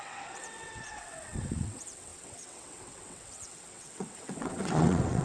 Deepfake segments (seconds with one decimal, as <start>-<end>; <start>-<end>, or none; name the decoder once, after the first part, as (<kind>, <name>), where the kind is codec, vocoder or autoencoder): 0.0-5.2 (vocoder, WaveNeXt)